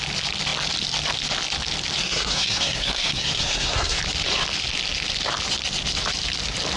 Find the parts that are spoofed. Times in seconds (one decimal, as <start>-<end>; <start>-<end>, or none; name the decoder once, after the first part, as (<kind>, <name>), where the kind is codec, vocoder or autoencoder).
2.0-4.0 (codec, SNAC)